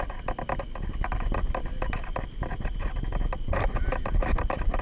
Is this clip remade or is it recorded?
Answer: recorded